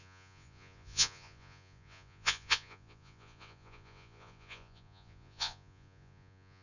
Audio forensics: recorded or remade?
remade